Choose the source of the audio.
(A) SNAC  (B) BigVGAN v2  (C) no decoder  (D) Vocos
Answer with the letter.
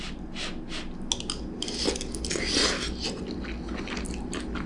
C